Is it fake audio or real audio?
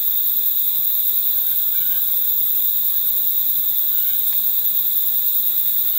fake